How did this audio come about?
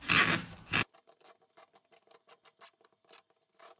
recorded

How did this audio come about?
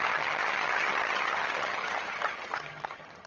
remade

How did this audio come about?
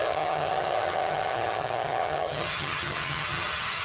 remade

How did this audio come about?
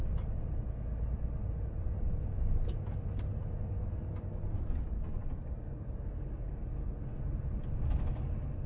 recorded